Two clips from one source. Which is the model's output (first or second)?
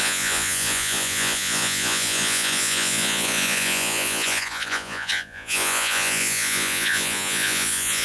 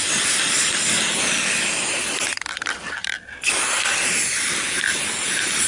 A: first